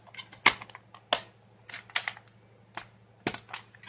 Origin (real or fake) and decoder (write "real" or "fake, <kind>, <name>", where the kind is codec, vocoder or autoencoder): real